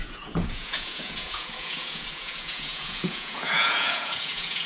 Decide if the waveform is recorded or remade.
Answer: remade